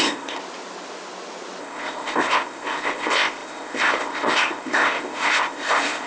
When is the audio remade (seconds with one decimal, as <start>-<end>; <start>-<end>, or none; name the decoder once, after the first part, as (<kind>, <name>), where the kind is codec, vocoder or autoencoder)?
0.0-0.4 (codec, ZipCodec); 1.6-6.1